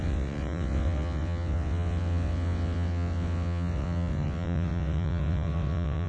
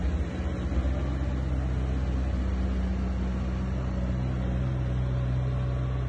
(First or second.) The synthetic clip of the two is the first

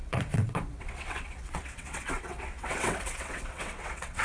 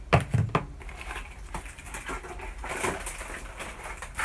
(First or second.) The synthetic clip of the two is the first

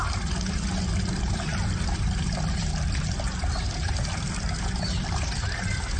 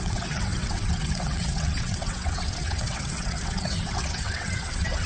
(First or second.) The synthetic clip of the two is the second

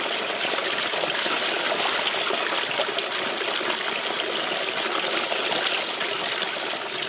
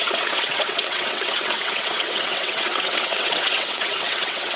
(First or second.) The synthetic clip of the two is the second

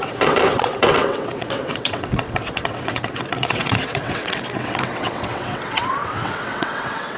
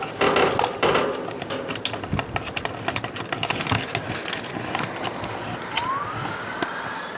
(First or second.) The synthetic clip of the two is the first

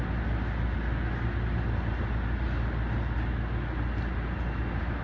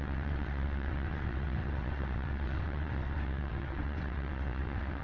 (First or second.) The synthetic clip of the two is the second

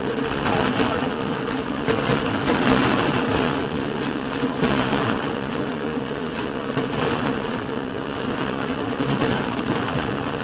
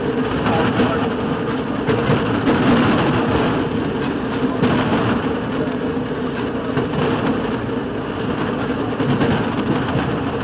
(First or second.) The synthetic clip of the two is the first